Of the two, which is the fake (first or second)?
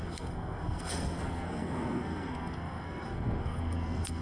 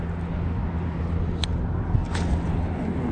first